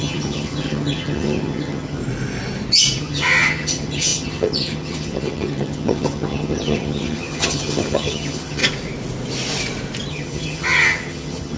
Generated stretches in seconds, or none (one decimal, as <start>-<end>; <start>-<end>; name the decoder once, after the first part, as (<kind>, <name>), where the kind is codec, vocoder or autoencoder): 0.0-2.0 (vocoder, HiFi-GAN); 3.0-8.6; 10.1-11.6

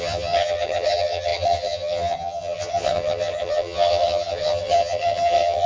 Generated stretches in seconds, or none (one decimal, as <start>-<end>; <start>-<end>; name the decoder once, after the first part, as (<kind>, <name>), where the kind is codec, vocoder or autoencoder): 0.0-5.7 (vocoder, HiFi-GAN)

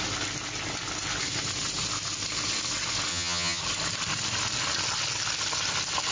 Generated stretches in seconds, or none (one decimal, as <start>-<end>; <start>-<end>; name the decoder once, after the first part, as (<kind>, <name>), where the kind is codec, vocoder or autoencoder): 3.1-3.6 (vocoder, HiFi-GAN)